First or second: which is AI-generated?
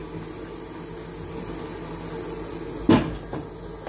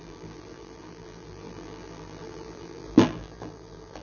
second